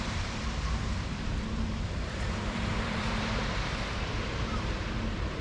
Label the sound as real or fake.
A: fake